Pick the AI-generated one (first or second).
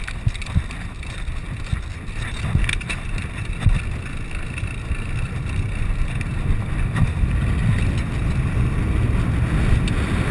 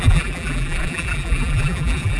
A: second